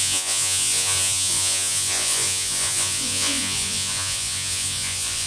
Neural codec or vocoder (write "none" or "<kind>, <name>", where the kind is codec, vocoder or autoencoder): vocoder, Vocos